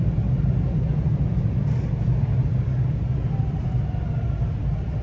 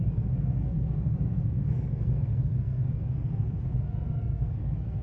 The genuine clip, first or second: first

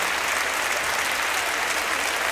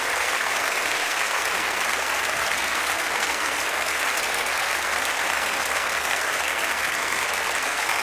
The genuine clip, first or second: first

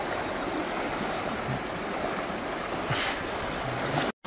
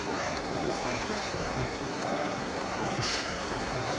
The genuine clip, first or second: first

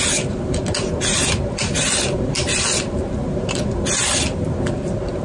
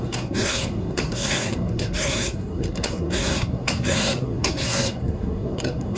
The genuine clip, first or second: first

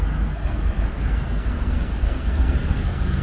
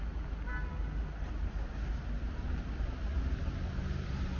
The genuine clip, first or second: second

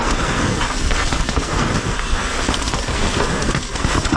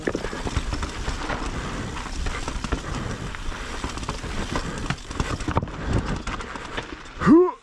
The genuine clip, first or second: second